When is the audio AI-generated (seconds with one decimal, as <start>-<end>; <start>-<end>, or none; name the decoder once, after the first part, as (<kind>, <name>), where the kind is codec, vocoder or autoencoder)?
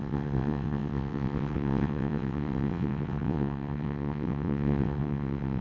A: 0.0-5.6 (vocoder, WaveNeXt)